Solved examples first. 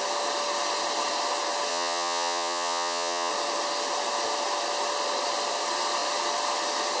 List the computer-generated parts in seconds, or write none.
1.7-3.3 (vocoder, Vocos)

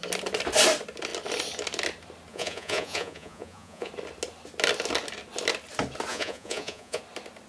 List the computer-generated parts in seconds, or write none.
2.3-3.9 (vocoder, Vocos); 6.1-7.0

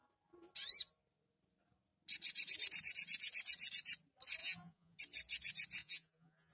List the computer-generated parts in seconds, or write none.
4.4-5.0 (vocoder, Vocos); 5.8-6.5